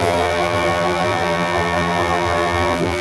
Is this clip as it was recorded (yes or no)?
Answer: no